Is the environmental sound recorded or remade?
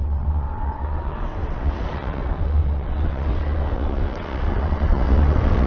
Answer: remade